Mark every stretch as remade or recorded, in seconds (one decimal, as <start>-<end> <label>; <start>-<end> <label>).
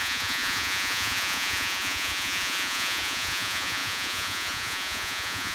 0.0-5.5 remade